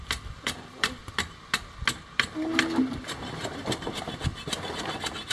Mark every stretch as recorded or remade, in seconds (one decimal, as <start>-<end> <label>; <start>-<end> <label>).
0.0-1.0 remade; 1.0-1.9 recorded; 1.9-4.3 remade; 4.3-5.3 recorded